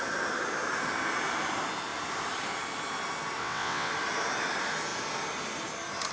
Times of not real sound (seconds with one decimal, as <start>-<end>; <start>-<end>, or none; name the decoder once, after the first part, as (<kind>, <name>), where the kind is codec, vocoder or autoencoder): 3.4-3.9 (vocoder, WaveNeXt)